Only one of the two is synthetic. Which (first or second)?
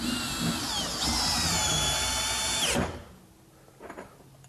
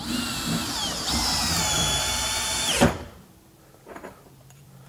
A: second